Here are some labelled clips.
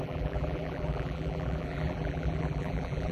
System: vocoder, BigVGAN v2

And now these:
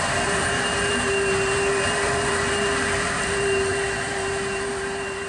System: vocoder, BigVGAN v2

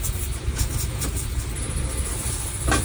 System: none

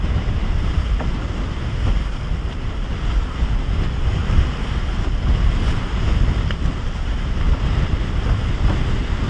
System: none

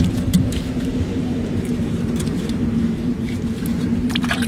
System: vocoder, BigVGAN v2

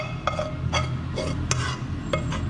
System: none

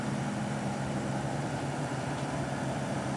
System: vocoder, BigVGAN v2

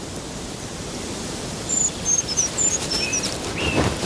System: vocoder, BigVGAN v2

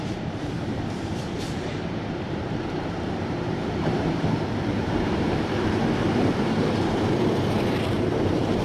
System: vocoder, BigVGAN v2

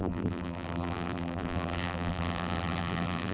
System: vocoder, BigVGAN v2